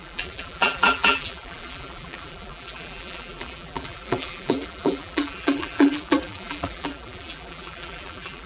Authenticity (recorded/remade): remade